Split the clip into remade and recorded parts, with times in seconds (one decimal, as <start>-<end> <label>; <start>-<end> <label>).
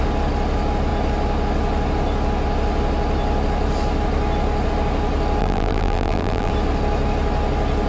0.0-5.4 recorded; 5.4-6.5 remade; 6.5-7.9 recorded